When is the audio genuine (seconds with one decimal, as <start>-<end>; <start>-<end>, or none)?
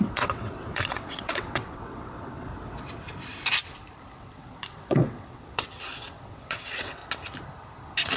2.5-4.2; 7.0-8.2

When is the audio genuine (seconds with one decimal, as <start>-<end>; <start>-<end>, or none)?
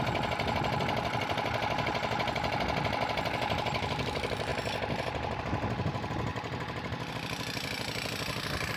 0.0-8.8